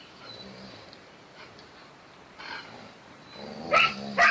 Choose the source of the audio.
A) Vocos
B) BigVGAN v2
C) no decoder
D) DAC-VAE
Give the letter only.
B